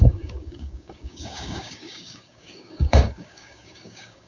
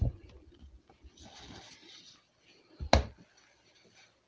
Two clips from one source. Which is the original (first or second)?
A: second